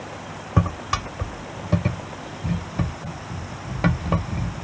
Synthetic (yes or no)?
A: no